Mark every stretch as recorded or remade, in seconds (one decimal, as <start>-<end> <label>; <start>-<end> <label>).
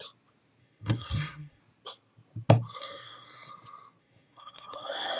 0.0-0.6 recorded; 0.6-1.6 remade; 1.6-2.8 recorded; 2.8-3.5 remade; 3.5-4.0 recorded; 4.0-5.2 remade